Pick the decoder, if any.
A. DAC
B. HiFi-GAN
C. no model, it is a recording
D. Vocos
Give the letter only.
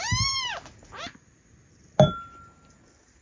C